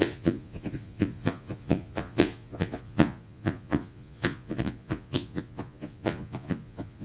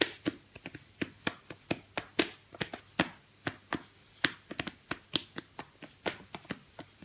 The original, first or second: second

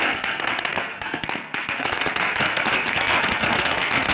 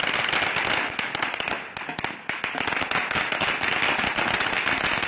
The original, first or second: second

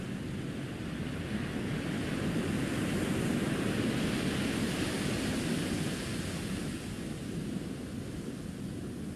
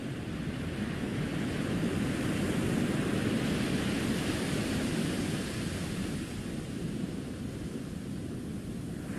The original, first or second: first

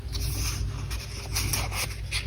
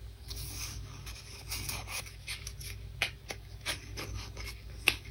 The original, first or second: first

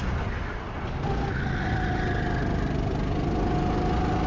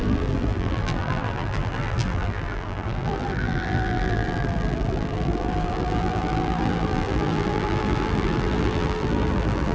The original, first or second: first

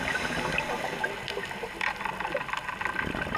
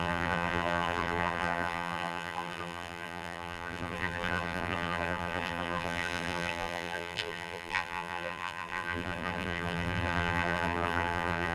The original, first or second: first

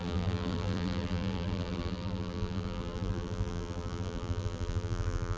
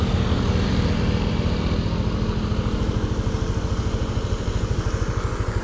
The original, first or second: second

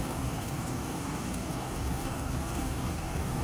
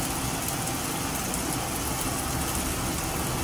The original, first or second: second